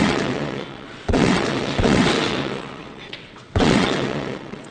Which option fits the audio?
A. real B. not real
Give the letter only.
B